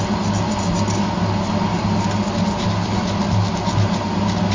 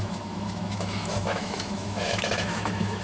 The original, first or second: first